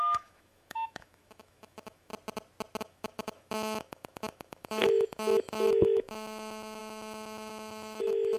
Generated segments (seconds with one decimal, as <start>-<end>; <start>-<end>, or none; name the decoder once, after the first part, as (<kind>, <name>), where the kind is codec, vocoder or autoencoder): 0.0-2.1 (autoencoder, DAC-VAE); 2.8-8.4